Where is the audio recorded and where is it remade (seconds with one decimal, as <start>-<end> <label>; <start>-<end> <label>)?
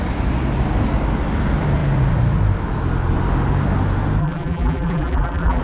0.0-4.2 recorded; 4.2-5.6 remade